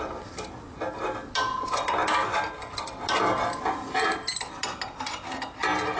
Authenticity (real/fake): real